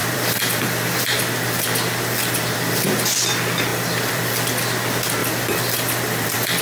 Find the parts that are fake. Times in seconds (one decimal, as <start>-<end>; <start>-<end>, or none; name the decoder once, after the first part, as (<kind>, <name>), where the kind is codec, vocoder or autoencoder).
0.0-1.0 (vocoder, BigVGAN v2); 3.7-4.4; 5.2-6.6